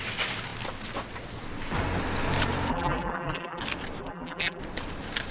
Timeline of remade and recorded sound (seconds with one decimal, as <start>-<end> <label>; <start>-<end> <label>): 0.0-2.7 recorded; 2.7-3.6 remade; 3.6-4.0 recorded; 4.0-4.6 remade; 4.6-5.3 recorded